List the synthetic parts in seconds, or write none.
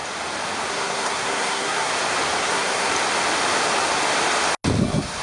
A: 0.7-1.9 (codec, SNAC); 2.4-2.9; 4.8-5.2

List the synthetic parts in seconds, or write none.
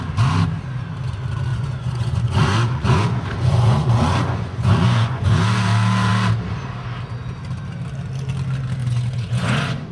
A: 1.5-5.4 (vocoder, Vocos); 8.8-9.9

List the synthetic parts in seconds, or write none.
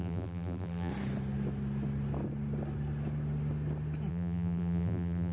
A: 0.0-0.9 (vocoder, BigVGAN v2); 4.1-5.3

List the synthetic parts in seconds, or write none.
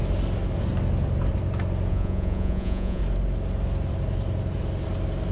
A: 1.9-3.0 (vocoder, Vocos)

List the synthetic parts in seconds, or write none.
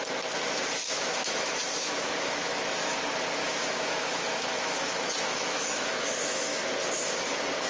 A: 0.8-3.0 (autoencoder, DAC-VAE); 3.4-6.6